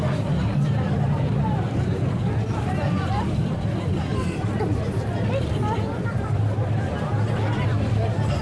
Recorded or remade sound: remade